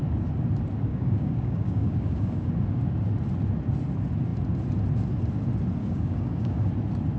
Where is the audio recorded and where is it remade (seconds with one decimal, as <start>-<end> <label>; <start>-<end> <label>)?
0.0-0.9 recorded; 0.9-2.5 remade; 2.5-5.8 recorded; 5.8-6.7 remade; 6.7-7.2 recorded